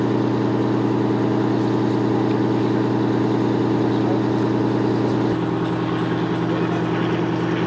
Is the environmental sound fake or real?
real